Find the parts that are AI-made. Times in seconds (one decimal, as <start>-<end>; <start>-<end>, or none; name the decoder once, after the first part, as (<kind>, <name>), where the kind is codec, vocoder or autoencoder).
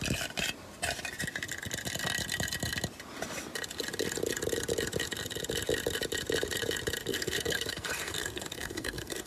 7.1-9.3 (codec, SNAC)